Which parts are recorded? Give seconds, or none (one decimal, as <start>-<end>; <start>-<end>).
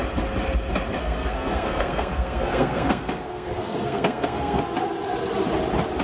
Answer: 0.0-1.0; 4.6-6.0